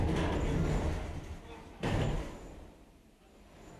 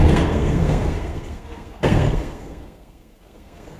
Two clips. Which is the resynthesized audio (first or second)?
second